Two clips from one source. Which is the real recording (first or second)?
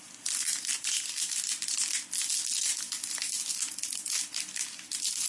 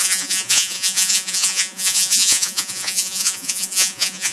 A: first